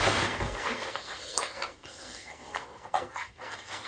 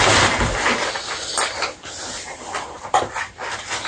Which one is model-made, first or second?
first